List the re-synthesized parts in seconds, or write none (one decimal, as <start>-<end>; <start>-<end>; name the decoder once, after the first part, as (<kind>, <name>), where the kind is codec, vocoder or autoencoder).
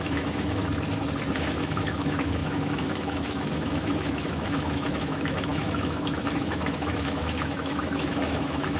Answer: 0.0-0.6 (autoencoder, DAC-VAE); 1.3-8.8